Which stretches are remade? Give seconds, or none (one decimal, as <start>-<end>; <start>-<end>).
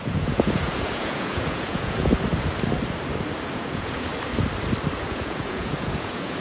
0.0-2.1; 3.5-4.1; 5.0-6.4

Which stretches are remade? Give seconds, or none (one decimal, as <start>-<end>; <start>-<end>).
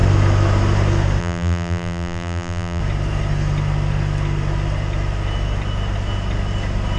1.2-2.8